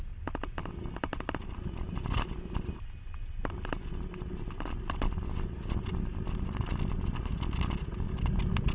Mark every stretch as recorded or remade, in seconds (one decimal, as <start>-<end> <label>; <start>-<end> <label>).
0.0-8.7 recorded